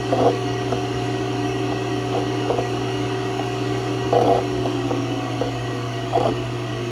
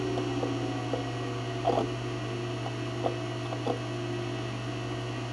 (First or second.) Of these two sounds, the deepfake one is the first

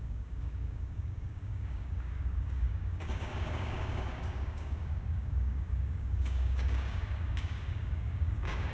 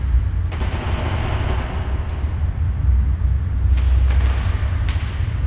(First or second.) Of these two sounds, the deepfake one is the first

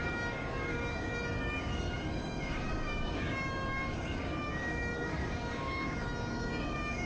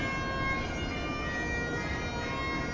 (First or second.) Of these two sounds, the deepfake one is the first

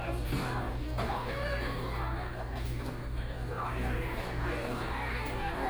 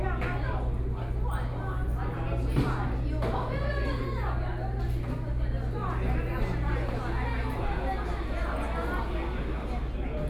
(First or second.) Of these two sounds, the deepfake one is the first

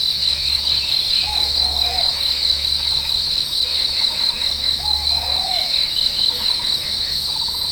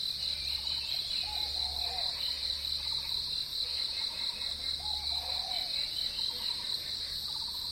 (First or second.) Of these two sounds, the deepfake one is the first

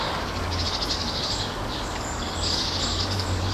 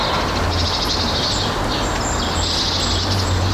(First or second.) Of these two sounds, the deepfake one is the first